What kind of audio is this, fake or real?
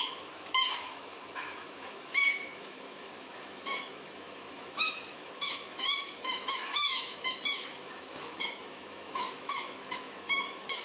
fake